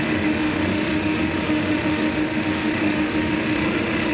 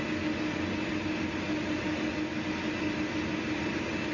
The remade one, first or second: first